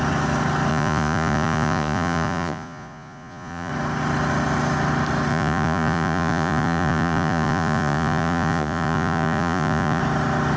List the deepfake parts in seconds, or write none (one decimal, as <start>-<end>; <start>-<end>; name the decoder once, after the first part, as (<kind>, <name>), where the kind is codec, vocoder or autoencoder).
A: 0.7-3.7 (vocoder, Vocos); 5.3-10.0